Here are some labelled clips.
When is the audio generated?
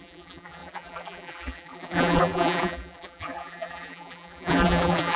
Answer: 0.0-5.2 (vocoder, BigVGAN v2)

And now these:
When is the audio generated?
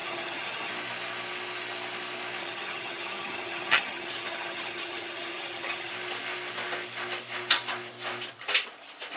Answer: 0.0-0.7 (vocoder, HiFi-GAN); 2.4-5.9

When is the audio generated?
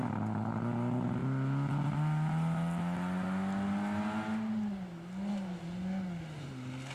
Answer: none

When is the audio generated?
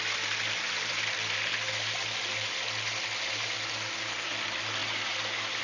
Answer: none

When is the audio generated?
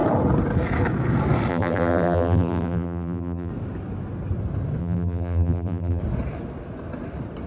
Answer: 1.5-3.5 (vocoder, BigVGAN v2); 4.8-6.0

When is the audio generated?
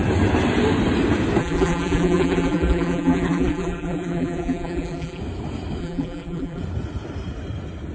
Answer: 1.4-5.2 (vocoder, BigVGAN v2); 5.8-6.6